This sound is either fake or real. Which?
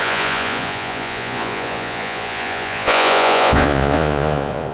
fake